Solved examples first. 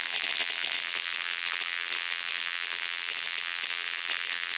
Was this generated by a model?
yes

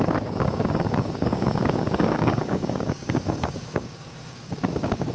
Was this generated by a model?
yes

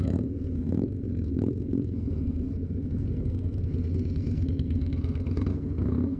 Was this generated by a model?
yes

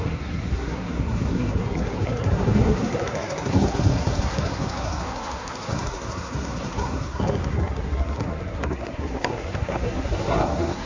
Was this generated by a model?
yes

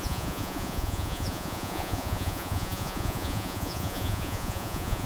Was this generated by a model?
yes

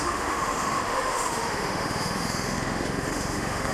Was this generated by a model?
yes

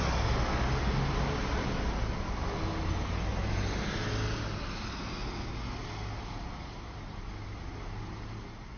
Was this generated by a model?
no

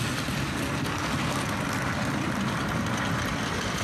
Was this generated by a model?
no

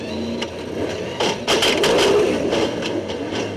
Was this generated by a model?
no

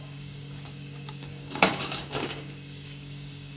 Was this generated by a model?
yes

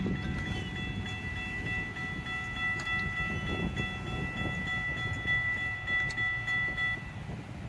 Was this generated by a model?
no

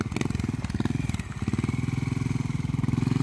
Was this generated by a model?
no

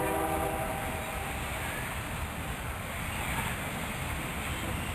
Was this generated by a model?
no